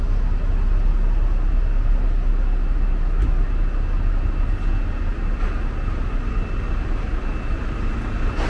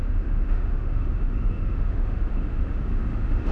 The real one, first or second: first